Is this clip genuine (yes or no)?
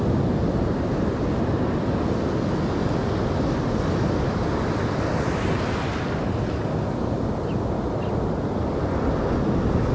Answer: yes